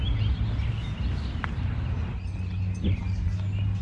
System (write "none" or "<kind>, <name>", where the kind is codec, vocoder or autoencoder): none